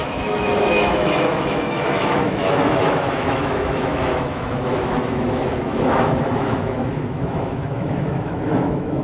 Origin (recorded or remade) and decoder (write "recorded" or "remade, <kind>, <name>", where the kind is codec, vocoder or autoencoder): remade, autoencoder, DAC-VAE